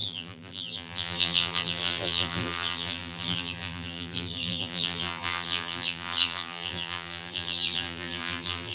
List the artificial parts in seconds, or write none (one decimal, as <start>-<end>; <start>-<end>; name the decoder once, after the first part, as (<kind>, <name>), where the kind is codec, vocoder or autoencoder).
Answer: 0.0-8.7 (vocoder, BigVGAN v2)